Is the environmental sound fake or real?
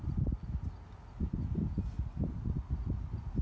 real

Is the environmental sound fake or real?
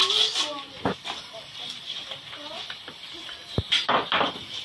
real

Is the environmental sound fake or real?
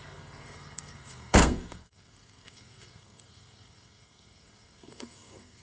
fake